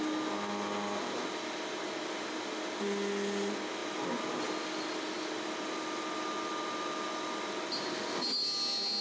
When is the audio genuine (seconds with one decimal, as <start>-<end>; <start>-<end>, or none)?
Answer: 0.0-3.8; 7.6-9.0